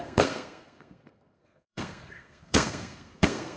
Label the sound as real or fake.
fake